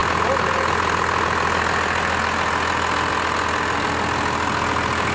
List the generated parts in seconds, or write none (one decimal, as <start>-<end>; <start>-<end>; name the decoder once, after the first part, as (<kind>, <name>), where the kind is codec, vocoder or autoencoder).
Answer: none